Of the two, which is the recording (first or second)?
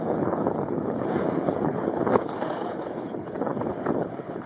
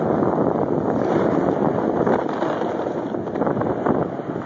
second